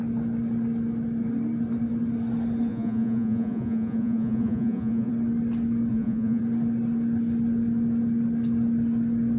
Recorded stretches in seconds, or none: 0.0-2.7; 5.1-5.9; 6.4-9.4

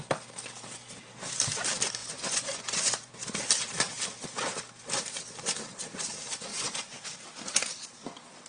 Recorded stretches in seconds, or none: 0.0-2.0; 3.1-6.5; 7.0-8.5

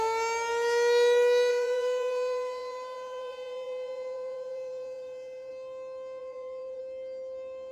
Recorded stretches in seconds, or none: 0.0-1.5; 5.5-6.2; 6.8-7.7

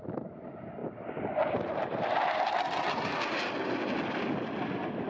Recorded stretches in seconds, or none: 0.0-5.1

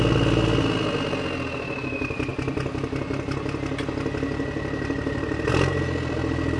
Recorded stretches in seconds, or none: 0.0-6.6

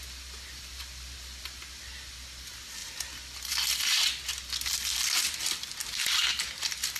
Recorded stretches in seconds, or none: 0.0-7.0